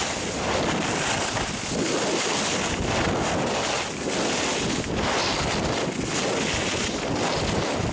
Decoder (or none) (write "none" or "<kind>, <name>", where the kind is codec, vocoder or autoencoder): none